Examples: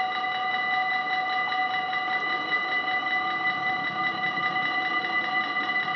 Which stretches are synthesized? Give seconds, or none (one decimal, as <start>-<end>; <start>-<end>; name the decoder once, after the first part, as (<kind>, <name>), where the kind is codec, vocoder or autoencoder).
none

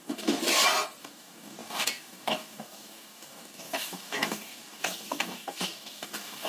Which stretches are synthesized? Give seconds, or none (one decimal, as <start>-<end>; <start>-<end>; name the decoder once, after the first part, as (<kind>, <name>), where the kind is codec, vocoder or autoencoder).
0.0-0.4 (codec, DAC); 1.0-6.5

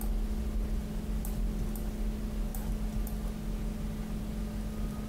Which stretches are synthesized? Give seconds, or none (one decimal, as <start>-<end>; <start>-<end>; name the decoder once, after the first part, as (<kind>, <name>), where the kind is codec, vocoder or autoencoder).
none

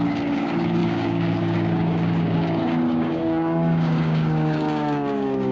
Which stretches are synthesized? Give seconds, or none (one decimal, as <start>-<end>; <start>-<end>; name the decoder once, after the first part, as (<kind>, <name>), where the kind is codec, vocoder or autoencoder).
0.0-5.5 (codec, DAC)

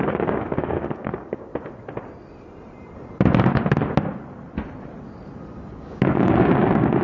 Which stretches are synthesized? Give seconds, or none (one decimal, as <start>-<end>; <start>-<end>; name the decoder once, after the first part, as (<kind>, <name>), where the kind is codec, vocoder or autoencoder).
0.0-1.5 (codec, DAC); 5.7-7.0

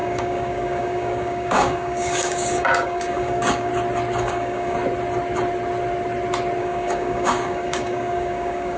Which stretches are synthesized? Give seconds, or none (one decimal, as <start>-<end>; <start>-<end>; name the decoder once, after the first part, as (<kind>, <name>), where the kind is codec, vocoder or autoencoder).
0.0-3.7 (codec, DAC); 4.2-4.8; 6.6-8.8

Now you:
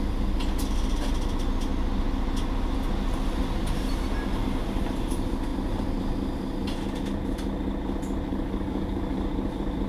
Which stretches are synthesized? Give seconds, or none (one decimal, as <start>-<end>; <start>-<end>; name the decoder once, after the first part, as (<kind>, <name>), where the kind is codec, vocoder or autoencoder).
8.3-9.3 (codec, DAC)